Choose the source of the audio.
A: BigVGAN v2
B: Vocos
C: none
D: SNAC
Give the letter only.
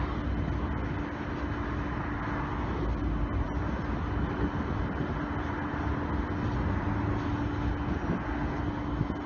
C